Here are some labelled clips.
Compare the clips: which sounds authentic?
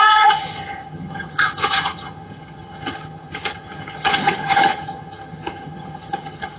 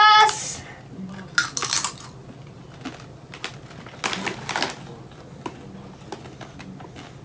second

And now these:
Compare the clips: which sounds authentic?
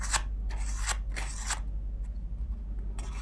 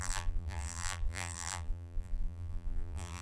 first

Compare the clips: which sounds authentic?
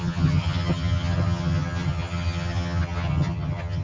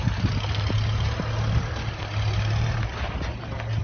second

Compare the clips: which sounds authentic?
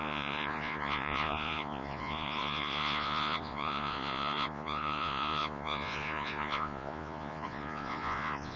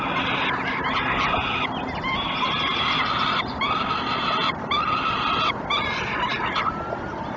second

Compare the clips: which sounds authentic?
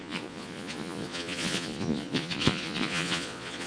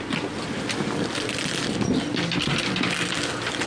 second